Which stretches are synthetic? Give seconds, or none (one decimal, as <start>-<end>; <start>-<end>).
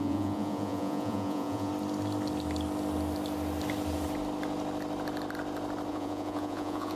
0.0-1.7; 5.9-7.0